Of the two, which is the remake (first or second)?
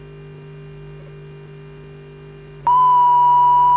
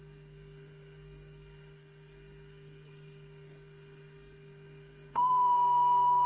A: second